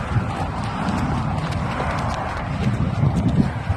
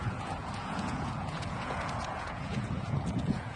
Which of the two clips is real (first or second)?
first